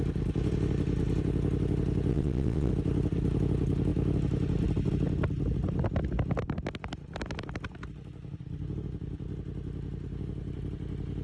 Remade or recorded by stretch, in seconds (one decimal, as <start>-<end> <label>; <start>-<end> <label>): 0.0-2.1 recorded; 2.1-2.7 remade; 2.7-11.2 recorded